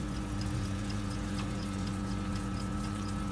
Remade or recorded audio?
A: remade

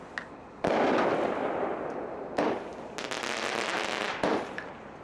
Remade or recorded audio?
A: recorded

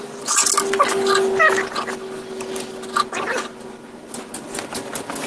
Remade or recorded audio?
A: recorded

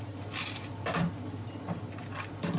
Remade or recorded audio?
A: recorded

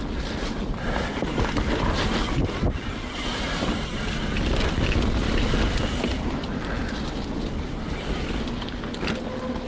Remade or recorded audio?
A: recorded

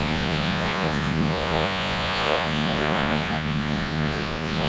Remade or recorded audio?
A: remade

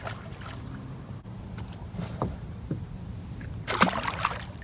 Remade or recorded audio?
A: recorded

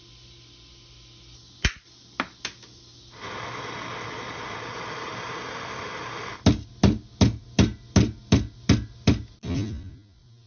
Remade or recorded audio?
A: recorded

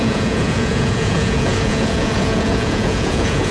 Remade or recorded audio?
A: remade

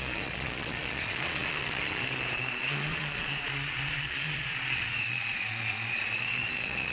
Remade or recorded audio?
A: remade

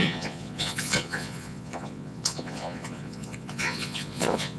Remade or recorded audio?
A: remade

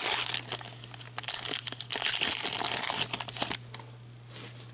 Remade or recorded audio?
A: recorded